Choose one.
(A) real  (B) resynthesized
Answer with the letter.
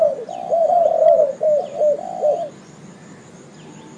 A